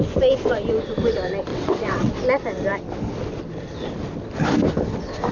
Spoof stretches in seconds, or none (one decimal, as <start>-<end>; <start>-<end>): 1.5-2.1